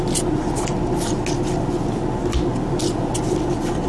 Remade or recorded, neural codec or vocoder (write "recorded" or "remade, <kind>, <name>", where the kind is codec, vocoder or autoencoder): recorded